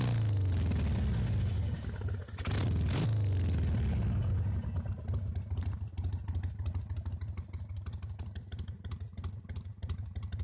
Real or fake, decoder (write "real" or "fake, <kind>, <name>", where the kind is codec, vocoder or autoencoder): real